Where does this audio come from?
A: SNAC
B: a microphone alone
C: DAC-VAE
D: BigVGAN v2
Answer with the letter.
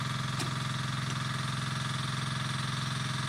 B